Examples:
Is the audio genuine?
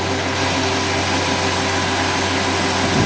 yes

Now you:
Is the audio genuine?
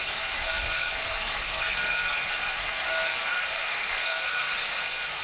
no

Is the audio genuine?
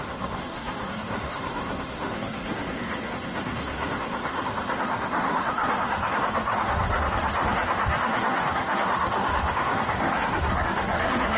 no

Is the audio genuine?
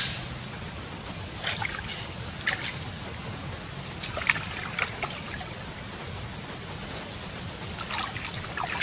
yes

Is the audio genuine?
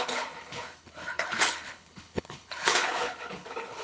no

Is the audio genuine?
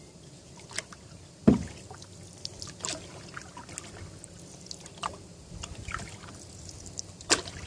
yes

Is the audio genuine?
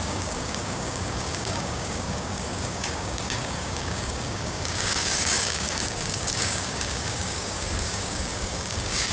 no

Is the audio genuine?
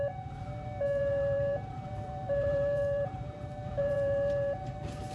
no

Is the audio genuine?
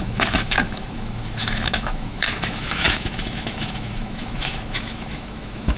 no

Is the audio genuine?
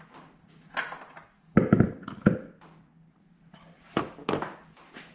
yes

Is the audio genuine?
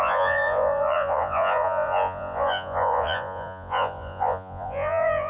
no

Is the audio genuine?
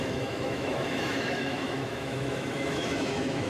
no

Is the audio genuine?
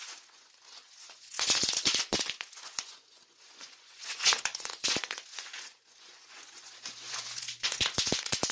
no